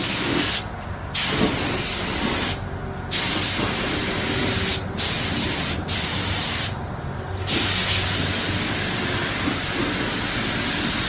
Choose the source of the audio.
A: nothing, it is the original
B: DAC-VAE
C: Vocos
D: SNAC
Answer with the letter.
A